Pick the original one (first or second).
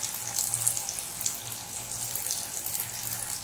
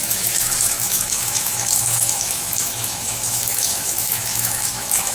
first